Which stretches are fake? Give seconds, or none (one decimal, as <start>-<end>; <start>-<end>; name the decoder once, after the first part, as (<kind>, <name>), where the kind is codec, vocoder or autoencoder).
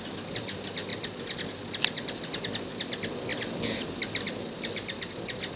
none